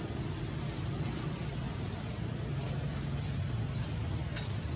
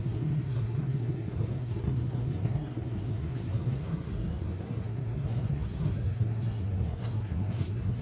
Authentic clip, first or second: first